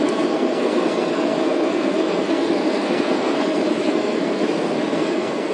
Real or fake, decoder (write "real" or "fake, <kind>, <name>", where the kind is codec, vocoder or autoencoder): fake, codec, SNAC